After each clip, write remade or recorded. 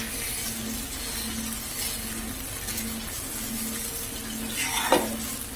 recorded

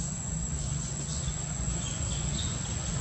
remade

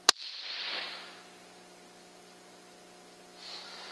recorded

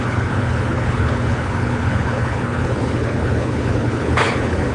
remade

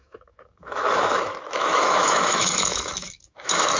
remade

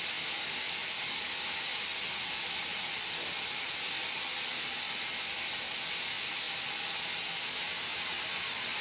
recorded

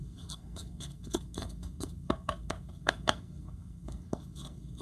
remade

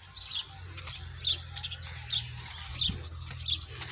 recorded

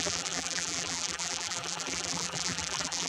remade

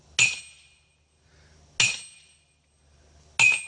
recorded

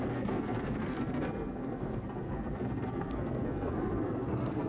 remade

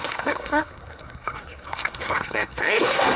remade